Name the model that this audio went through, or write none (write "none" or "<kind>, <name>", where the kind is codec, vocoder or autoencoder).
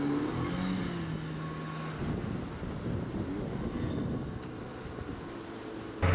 none